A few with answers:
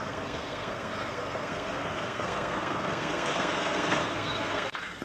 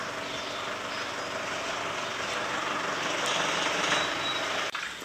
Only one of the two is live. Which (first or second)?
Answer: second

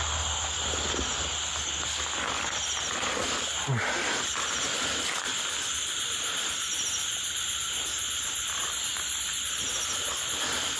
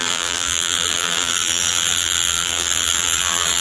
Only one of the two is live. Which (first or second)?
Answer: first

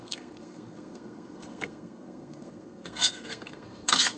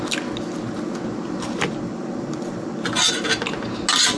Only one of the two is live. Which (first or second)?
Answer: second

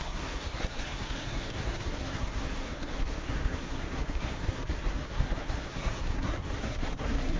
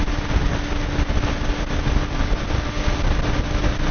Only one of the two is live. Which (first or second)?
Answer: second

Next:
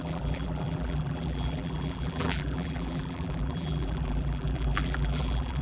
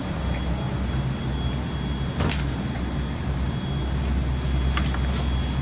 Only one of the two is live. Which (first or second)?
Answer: second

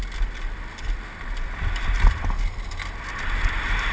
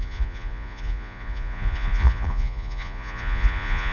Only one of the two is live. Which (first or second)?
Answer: first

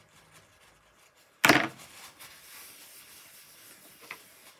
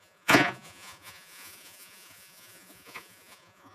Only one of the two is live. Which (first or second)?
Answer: first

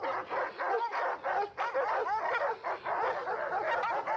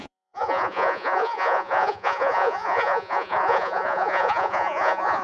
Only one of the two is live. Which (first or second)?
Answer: first